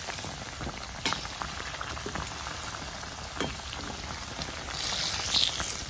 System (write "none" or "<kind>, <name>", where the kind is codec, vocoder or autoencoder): none